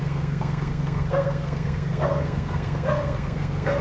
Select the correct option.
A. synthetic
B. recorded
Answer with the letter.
A